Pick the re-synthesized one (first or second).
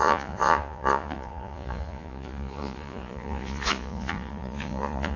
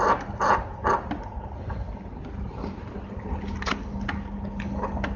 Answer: first